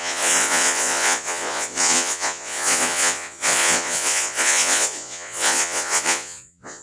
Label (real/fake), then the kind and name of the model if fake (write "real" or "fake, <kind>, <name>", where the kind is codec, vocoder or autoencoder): fake, vocoder, Vocos